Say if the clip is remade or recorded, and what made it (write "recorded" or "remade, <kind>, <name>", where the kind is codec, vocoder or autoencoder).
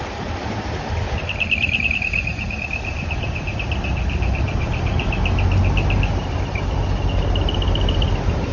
recorded